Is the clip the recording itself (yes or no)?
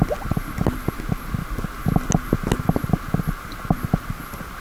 yes